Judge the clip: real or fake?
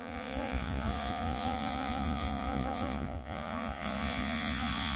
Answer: fake